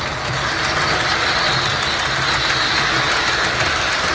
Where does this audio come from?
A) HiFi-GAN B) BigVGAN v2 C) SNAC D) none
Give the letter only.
D